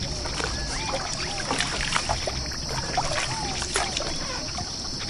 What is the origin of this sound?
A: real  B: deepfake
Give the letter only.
A